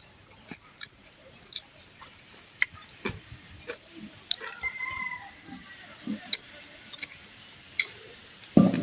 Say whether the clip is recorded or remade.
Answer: remade